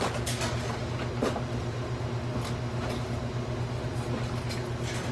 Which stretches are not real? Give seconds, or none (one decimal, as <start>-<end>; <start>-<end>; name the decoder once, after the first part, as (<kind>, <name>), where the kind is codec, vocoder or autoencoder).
none